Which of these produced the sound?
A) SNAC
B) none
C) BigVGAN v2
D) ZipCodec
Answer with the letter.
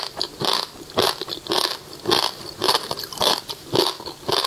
B